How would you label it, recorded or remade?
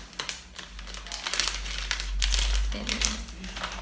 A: recorded